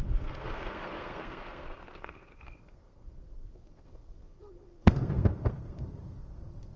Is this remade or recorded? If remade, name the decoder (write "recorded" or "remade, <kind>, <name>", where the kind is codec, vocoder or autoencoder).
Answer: remade, codec, SNAC